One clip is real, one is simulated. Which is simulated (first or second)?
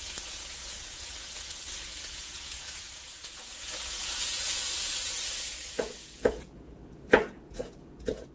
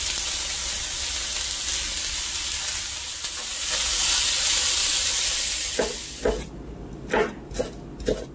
first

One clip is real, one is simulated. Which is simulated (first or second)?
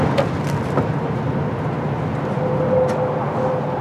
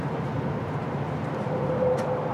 second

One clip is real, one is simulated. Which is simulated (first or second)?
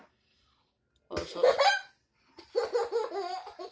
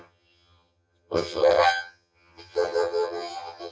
second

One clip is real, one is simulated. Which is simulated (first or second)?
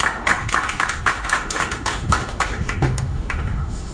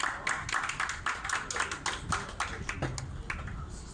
first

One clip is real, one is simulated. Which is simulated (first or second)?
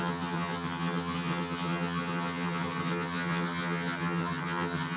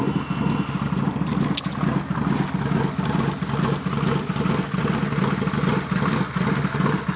first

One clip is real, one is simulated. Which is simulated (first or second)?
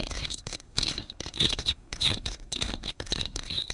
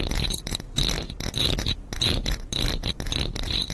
first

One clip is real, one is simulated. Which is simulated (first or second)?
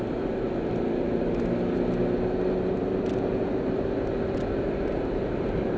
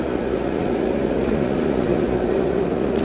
second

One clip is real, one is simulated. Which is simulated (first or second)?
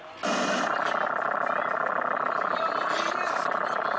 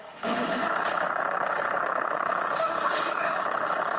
second